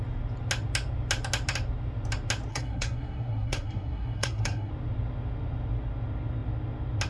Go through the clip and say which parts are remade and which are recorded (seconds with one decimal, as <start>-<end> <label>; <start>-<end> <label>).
0.0-2.5 recorded; 2.5-4.7 remade; 4.7-7.1 recorded